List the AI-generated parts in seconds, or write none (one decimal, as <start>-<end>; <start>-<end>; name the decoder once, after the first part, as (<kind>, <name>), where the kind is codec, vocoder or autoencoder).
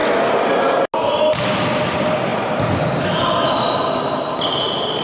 none